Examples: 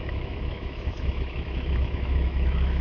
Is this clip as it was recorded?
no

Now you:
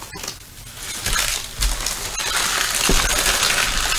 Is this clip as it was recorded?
yes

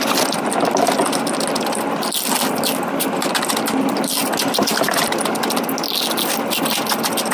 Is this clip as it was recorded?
yes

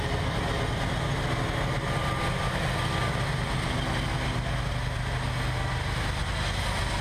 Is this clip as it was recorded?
yes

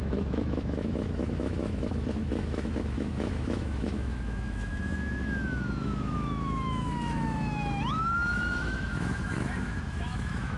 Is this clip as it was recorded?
no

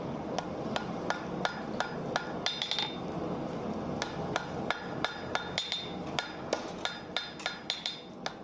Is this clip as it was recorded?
yes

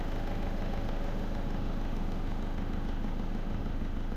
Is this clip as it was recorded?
no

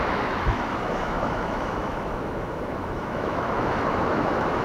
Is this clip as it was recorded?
no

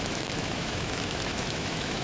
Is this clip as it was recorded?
no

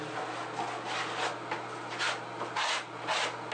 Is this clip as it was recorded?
yes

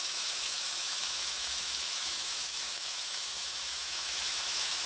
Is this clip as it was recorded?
no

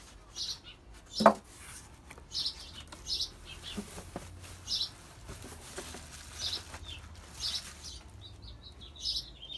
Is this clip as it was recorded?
yes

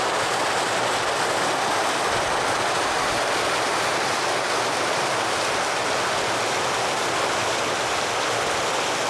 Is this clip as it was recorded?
yes